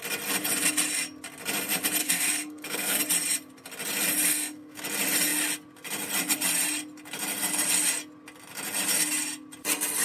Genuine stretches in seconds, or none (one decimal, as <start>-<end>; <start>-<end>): 0.0-2.0; 3.0-4.3; 4.8-10.0